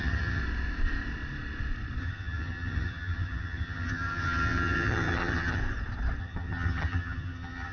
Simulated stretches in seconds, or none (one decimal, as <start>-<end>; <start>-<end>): 0.0-0.4; 2.0-5.6; 6.2-7.7